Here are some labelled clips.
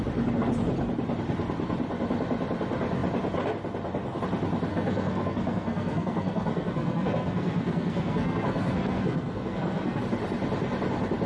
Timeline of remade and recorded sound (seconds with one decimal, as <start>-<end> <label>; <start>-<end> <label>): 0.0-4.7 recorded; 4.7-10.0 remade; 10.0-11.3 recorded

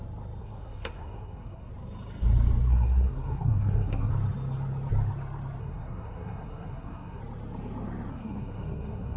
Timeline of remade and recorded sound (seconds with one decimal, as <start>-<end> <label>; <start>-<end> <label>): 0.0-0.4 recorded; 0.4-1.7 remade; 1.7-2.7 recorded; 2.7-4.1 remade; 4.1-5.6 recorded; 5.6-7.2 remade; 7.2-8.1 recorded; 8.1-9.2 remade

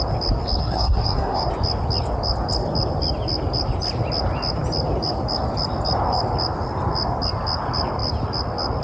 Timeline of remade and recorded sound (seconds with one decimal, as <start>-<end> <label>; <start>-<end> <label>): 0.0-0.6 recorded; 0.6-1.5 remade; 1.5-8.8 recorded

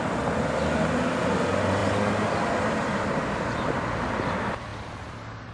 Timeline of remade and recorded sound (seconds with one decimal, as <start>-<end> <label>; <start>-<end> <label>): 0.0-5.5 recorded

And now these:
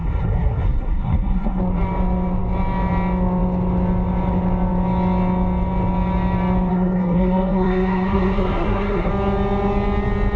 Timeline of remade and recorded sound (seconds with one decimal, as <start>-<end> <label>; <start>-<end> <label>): 0.0-1.6 remade; 1.6-6.7 recorded; 6.7-9.1 remade; 9.1-10.4 recorded

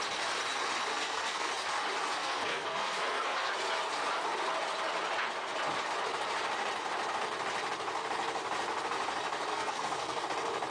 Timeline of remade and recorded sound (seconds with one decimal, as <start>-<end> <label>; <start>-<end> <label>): 0.0-0.9 recorded; 0.9-1.5 remade; 1.5-2.2 recorded; 2.2-3.5 remade; 3.5-9.5 recorded; 9.5-10.2 remade; 10.2-10.7 recorded

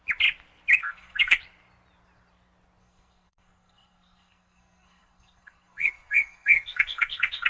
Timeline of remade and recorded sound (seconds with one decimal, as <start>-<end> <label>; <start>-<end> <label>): 0.0-0.8 recorded; 0.8-1.4 remade; 1.4-2.8 recorded; 2.8-7.5 remade